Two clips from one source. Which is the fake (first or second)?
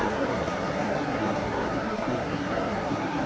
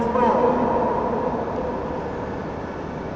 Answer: first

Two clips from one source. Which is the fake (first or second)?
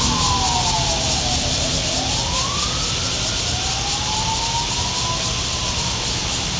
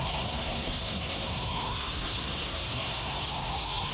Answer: second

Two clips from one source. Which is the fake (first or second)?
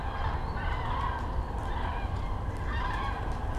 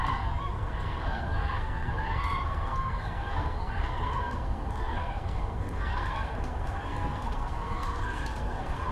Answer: second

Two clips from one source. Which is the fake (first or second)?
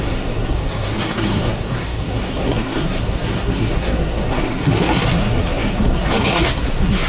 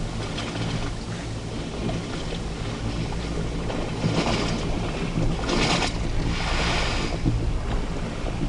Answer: first